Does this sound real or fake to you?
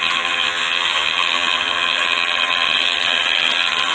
fake